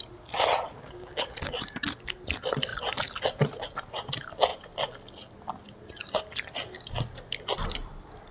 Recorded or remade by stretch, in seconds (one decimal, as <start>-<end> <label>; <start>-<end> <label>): 0.0-0.7 recorded; 0.7-1.2 remade; 1.2-8.3 recorded